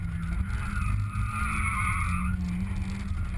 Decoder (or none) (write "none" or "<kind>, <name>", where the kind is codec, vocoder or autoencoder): none